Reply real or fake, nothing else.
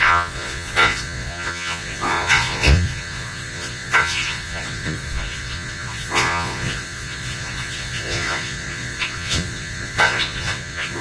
fake